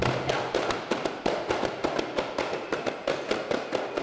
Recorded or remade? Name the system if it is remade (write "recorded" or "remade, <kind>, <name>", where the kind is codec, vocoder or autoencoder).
recorded